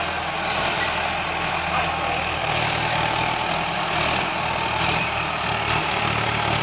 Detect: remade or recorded recorded